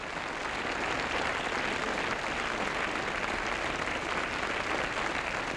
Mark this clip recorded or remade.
recorded